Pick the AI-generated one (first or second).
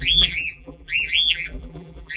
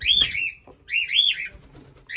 first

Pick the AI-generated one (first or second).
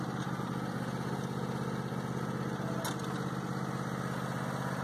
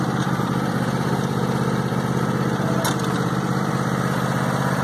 second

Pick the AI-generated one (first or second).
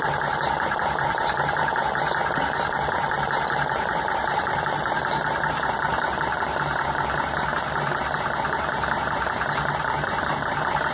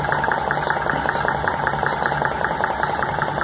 first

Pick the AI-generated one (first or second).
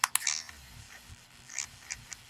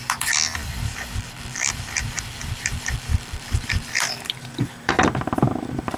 second